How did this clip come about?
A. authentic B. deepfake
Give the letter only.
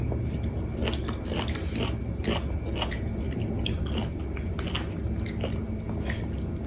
A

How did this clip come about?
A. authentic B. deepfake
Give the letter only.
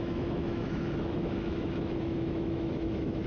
B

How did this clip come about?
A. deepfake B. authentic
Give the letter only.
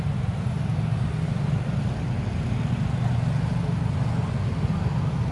B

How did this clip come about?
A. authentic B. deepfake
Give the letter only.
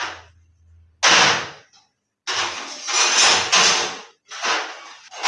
A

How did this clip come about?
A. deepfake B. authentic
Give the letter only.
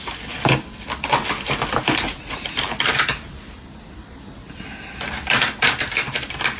B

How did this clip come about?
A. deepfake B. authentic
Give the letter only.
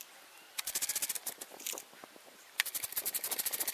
B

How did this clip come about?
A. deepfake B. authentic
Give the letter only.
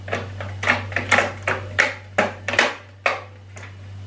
B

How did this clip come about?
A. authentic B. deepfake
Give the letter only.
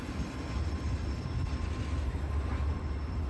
B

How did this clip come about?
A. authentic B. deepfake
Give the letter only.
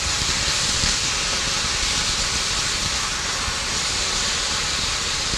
B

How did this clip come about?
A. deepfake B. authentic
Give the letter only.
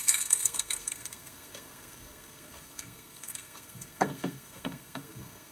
A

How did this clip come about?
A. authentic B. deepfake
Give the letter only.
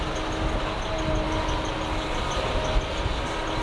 A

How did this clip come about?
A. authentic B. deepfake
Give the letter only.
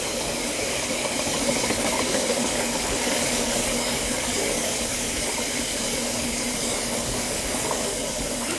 B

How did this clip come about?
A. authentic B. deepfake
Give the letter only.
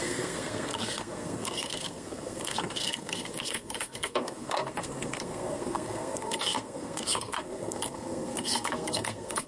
B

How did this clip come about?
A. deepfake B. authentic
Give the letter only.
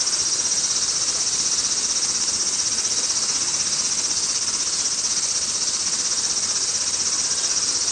B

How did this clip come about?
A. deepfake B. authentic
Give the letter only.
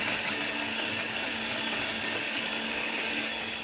A